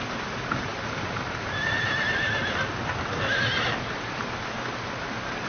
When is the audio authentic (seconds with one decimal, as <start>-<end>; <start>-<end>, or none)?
0.0-5.5